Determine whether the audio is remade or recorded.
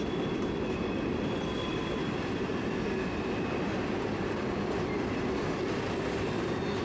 recorded